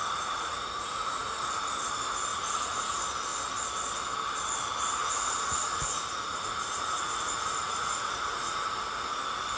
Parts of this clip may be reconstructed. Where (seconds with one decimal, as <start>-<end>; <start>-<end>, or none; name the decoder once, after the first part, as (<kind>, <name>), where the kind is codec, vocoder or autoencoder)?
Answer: 0.0-1.5 (vocoder, Vocos); 2.3-2.9; 5.0-8.7